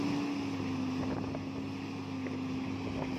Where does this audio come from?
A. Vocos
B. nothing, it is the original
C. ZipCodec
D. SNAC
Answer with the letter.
B